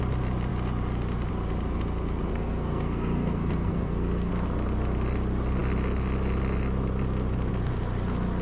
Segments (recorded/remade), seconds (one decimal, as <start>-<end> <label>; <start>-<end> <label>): 0.0-2.3 recorded; 2.3-4.3 remade; 4.3-8.4 recorded